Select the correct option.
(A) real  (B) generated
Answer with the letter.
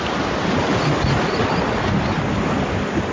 A